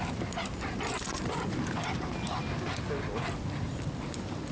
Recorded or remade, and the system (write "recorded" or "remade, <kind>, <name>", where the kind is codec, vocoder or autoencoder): recorded